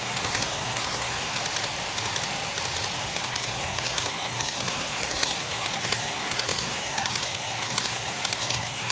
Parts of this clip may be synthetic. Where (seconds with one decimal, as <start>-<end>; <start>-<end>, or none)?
0.0-1.4; 3.0-8.9